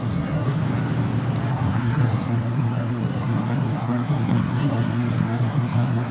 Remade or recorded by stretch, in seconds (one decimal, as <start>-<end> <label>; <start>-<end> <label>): 0.0-0.6 remade; 0.6-1.5 recorded; 1.5-6.1 remade

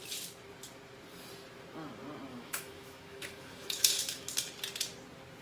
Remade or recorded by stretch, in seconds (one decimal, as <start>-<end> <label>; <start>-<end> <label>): 0.0-2.3 recorded; 2.3-4.3 remade; 4.3-5.4 recorded

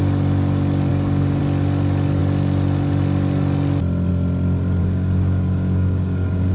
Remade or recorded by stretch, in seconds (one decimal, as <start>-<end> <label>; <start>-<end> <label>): 0.0-0.9 recorded; 0.9-1.4 remade; 1.4-4.8 recorded; 4.8-6.5 remade